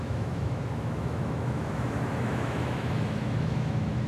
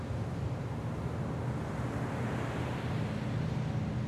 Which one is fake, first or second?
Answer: first